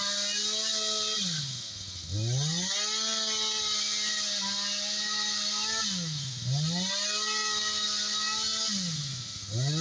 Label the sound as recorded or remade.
recorded